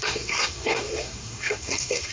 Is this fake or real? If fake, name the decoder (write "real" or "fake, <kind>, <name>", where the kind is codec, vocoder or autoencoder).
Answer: fake, codec, SNAC